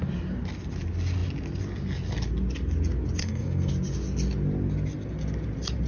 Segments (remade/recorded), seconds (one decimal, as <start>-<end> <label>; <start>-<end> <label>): 0.0-3.2 recorded; 3.2-3.7 remade; 3.7-5.9 recorded

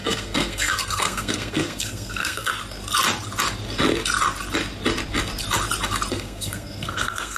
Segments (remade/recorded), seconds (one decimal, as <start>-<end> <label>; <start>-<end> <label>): 0.0-2.5 remade; 2.5-6.1 recorded; 6.1-7.4 remade

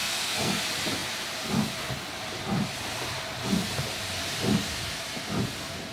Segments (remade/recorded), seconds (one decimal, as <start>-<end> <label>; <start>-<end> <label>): 0.0-0.6 remade; 0.6-5.9 recorded